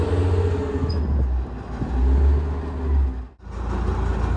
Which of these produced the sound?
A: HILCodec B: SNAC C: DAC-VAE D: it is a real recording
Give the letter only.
D